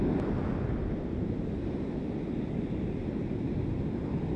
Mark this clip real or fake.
real